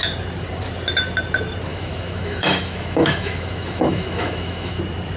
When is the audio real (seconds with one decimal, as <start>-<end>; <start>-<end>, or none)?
0.0-1.7; 4.8-5.2